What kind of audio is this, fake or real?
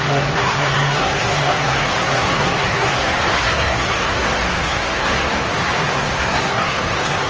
fake